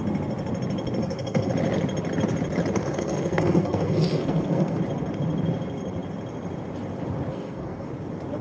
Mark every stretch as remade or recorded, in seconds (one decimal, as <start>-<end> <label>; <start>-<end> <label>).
0.0-1.0 recorded; 1.0-1.5 remade; 1.5-2.8 recorded; 2.8-4.8 remade; 4.8-7.3 recorded; 7.3-7.9 remade; 7.9-8.4 recorded